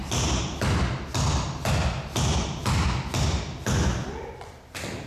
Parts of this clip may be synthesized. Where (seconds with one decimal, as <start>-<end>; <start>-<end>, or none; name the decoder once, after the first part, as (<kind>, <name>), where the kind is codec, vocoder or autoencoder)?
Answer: none